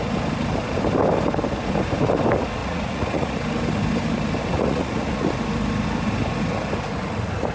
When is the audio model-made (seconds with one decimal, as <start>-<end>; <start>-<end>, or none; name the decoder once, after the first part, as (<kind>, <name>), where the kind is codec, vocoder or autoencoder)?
2.6-3.4 (vocoder, Vocos); 4.5-5.3